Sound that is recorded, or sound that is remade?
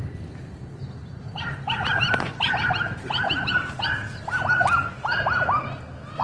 recorded